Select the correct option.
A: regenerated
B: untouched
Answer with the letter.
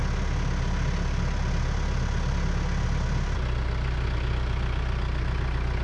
B